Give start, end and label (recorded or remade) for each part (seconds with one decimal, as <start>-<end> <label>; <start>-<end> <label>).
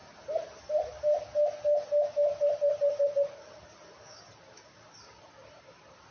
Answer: 0.0-6.1 recorded